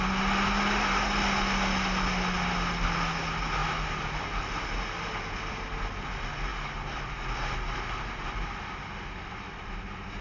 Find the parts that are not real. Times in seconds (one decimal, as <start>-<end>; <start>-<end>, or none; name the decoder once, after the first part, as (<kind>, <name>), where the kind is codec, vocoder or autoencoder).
none